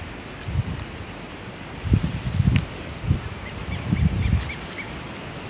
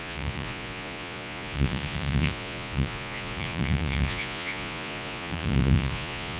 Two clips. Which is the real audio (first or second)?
first